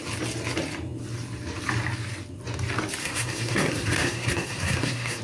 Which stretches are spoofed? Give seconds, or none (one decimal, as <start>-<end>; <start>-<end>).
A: 3.0-5.2